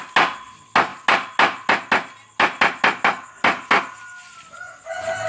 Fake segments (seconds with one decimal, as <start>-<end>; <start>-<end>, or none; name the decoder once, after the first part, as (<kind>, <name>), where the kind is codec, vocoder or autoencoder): none